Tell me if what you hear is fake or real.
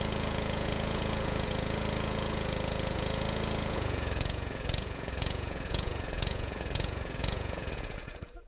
fake